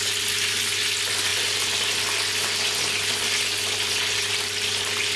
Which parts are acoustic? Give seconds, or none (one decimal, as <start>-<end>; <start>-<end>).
0.0-5.2